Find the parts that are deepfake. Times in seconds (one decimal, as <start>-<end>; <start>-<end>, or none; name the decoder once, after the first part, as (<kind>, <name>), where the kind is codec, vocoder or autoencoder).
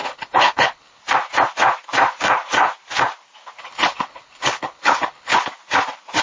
0.0-1.0 (codec, HILCodec); 3.6-5.3